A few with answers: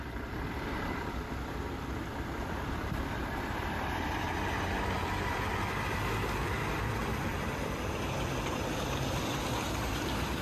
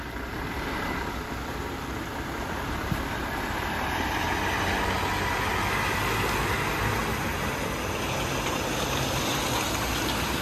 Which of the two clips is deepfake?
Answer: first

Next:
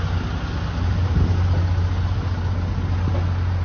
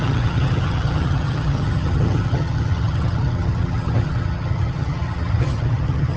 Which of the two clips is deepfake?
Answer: second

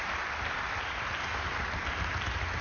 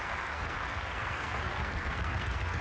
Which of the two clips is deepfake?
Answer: second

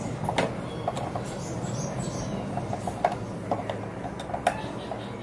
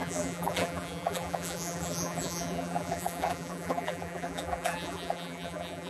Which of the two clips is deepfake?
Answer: second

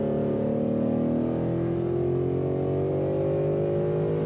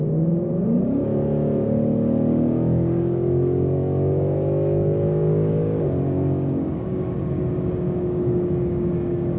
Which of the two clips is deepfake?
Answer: second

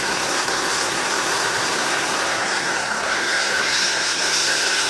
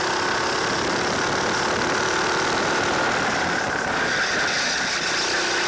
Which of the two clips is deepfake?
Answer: first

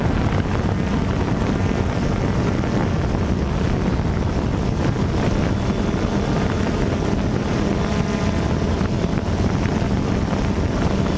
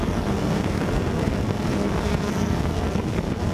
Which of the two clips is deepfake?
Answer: second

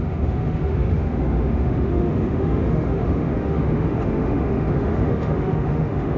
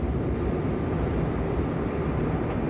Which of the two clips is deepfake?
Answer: first